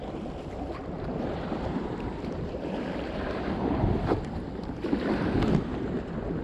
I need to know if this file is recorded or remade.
remade